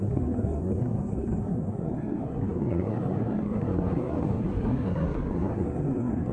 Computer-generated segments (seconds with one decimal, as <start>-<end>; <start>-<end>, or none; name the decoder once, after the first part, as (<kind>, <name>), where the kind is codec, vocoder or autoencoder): 0.0-6.3 (codec, SNAC)